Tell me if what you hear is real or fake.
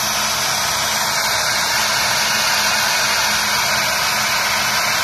real